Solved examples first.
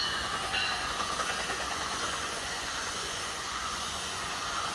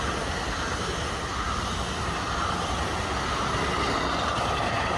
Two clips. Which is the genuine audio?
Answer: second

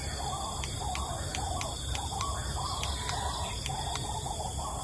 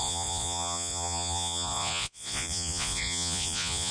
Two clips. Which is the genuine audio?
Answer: first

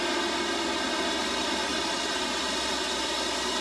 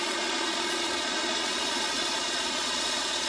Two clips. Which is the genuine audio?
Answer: first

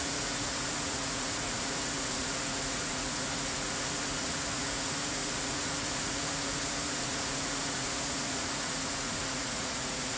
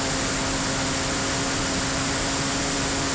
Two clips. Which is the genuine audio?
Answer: second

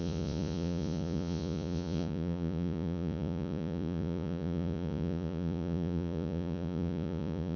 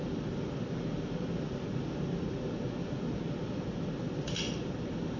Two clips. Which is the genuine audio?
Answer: second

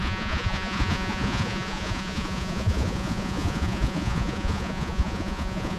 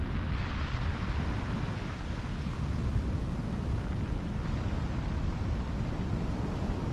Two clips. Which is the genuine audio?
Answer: second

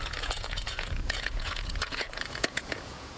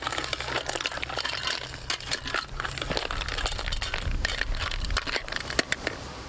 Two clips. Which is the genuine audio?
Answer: second